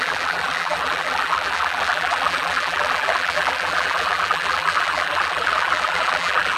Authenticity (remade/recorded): remade